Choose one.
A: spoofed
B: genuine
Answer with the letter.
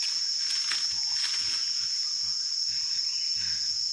B